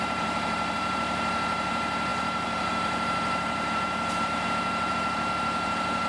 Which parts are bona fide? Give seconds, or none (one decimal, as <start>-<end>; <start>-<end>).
none